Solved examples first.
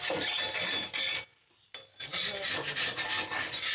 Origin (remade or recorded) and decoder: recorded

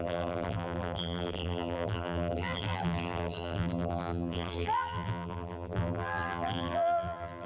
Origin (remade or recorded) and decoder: remade, vocoder, BigVGAN v2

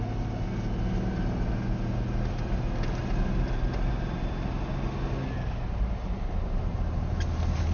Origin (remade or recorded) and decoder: recorded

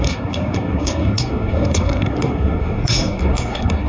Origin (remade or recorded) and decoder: remade, codec, SNAC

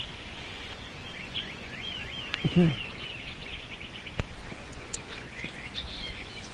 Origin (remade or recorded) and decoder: remade, vocoder, Vocos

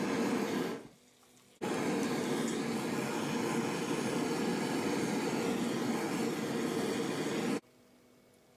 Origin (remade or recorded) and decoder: recorded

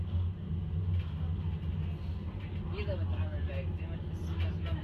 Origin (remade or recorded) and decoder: recorded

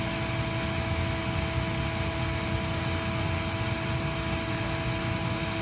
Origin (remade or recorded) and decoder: recorded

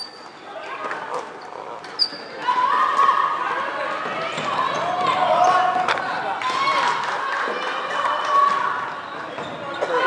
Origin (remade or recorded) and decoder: recorded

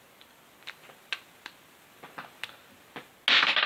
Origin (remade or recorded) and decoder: recorded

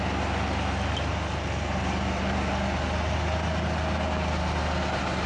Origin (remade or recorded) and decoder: recorded